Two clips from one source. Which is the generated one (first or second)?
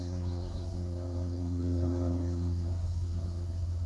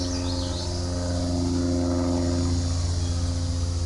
first